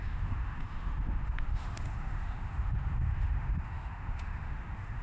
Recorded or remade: remade